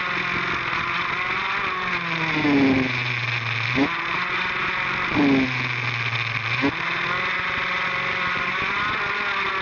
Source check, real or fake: real